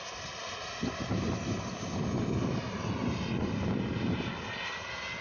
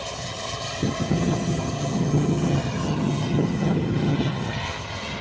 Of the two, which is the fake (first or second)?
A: second